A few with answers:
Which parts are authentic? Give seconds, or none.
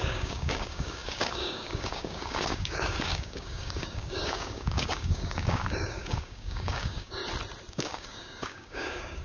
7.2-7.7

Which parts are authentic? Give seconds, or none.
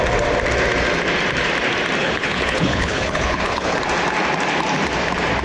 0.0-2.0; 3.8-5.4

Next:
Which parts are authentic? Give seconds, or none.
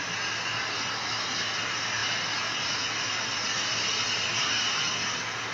0.0-5.5